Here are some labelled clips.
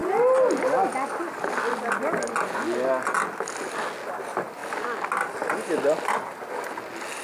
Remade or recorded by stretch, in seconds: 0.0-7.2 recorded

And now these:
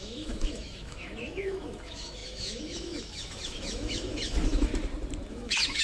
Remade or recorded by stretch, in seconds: 0.0-4.7 remade; 4.7-5.3 recorded; 5.3-5.8 remade

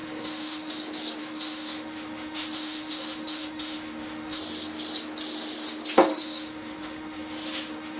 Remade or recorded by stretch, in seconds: 0.0-0.7 remade; 0.7-1.2 recorded; 1.2-4.4 remade; 4.4-6.1 recorded; 6.1-8.0 remade

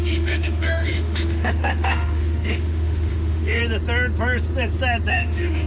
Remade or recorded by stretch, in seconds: 0.0-3.6 remade; 3.6-5.1 recorded; 5.1-5.7 remade

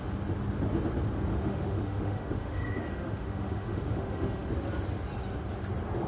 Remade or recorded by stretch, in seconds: 0.0-1.3 recorded; 1.3-4.5 remade; 4.5-6.1 recorded